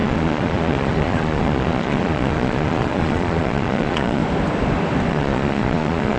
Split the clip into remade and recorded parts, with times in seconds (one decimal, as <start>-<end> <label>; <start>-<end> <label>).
0.0-4.2 remade; 4.2-5.1 recorded; 5.1-6.2 remade